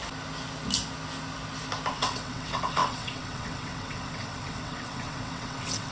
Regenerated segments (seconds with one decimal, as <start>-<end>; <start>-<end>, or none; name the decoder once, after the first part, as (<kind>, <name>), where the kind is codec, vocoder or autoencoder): 1.9-5.9 (vocoder, WaveNeXt)